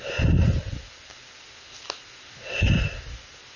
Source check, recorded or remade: recorded